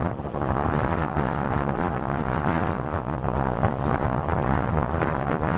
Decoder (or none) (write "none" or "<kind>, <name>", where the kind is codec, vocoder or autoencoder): vocoder, Vocos